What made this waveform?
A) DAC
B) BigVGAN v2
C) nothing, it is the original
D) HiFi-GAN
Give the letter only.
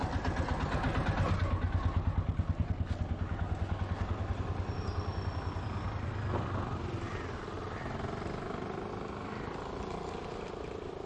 C